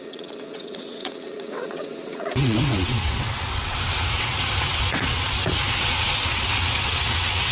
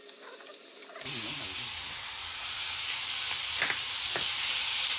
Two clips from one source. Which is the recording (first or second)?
second